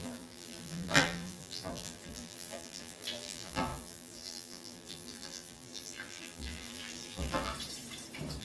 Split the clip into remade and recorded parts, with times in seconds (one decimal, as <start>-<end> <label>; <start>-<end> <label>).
0.0-7.5 remade; 7.5-8.4 recorded